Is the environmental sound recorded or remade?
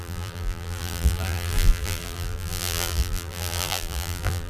remade